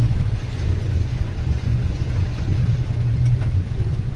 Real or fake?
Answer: fake